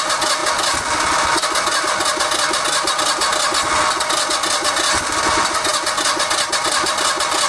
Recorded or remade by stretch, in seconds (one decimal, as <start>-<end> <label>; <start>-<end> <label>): 0.0-7.5 recorded